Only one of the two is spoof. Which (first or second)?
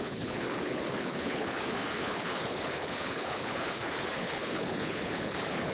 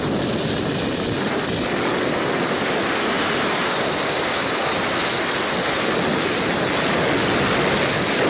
first